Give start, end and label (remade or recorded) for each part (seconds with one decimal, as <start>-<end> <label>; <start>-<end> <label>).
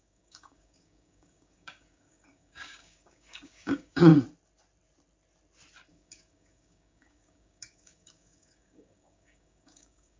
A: 0.0-4.1 remade; 4.1-5.9 recorded; 5.9-10.2 remade